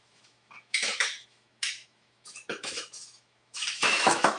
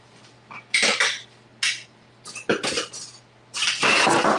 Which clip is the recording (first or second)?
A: second